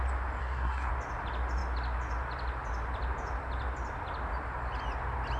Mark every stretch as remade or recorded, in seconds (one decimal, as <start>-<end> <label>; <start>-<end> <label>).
0.0-0.4 recorded; 0.4-0.9 remade; 0.9-5.4 recorded